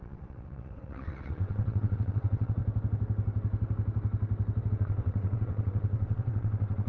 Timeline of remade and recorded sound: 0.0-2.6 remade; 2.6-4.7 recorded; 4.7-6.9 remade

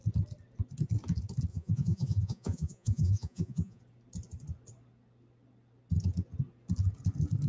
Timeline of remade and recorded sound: 0.0-1.5 recorded; 1.5-3.8 remade; 3.8-7.5 recorded

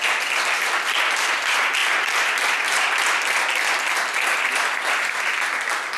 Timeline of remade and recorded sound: 0.0-6.0 recorded

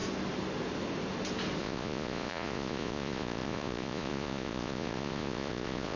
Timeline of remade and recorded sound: 0.0-1.6 recorded; 1.6-6.0 remade

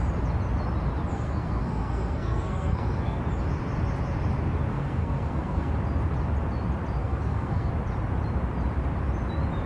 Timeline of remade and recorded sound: 0.0-1.1 recorded; 1.1-3.2 remade; 3.2-4.7 recorded; 4.7-5.7 remade; 5.7-7.0 recorded; 7.0-7.7 remade; 7.7-9.7 recorded

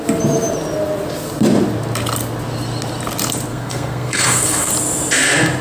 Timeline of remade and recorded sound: 0.0-3.5 recorded; 3.5-4.7 remade; 4.7-5.6 recorded

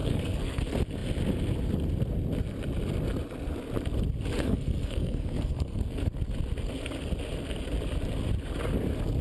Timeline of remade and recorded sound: 0.0-0.6 remade; 0.6-4.4 recorded; 4.4-6.0 remade; 6.0-9.2 recorded

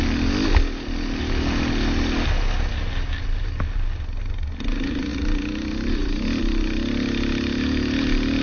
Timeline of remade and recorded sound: 0.0-8.4 recorded